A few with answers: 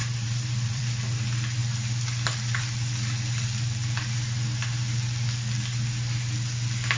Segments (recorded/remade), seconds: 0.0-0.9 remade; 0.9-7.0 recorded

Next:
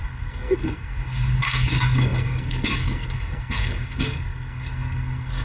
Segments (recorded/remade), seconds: 0.0-5.4 remade

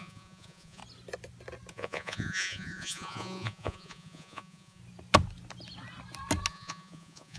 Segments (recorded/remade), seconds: 0.0-0.8 remade; 0.8-1.7 recorded; 1.7-4.8 remade; 4.8-6.5 recorded; 6.5-7.4 remade